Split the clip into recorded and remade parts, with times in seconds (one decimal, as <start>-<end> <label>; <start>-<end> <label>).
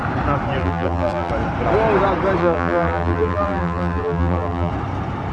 0.0-0.6 recorded; 0.6-1.3 remade; 1.3-2.4 recorded; 2.4-4.7 remade; 4.7-5.3 recorded